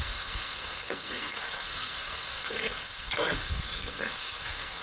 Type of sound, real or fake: fake